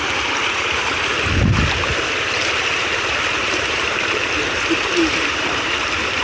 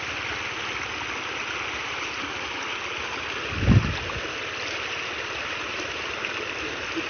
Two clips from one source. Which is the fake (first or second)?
first